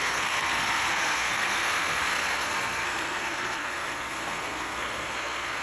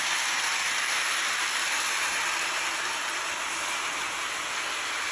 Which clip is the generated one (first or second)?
first